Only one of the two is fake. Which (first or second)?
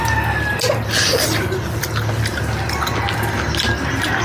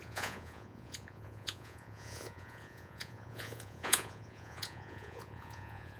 second